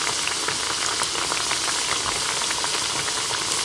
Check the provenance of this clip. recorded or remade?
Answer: recorded